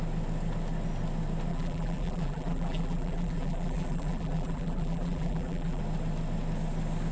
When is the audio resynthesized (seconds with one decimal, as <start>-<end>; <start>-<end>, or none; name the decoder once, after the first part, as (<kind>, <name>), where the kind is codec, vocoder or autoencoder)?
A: 1.5-5.8 (vocoder, BigVGAN v2)